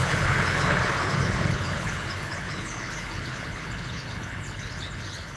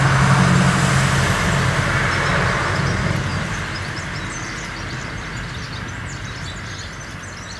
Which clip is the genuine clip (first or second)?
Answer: second